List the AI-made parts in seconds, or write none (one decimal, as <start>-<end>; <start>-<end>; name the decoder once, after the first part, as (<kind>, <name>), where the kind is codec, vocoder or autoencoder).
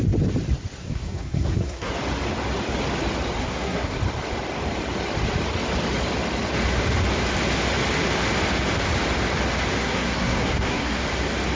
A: 0.8-1.9 (codec, SNAC); 3.4-4.0; 9.8-11.0